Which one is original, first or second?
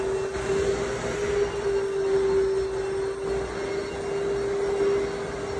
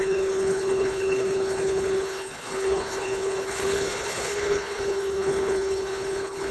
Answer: first